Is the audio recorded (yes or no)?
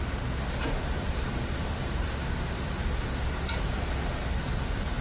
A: no